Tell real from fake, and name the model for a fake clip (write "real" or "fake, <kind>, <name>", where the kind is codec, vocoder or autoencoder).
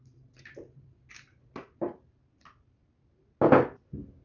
real